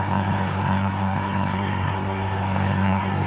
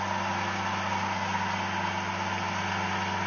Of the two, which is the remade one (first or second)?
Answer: first